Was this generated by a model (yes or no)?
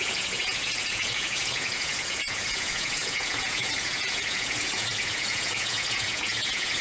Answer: yes